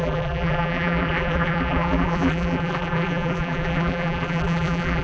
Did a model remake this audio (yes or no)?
yes